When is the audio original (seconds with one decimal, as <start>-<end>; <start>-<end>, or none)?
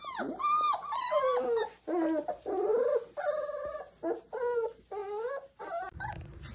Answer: 0.0-6.5